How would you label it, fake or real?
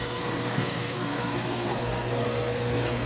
fake